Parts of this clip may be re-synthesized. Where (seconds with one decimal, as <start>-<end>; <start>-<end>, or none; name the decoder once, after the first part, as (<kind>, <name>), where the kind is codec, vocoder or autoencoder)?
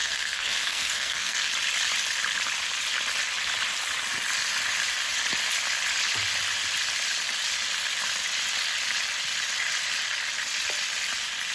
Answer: 0.0-1.5 (codec, SNAC)